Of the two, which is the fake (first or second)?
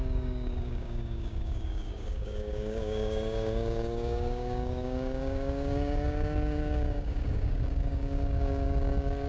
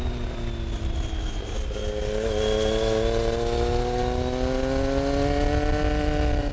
first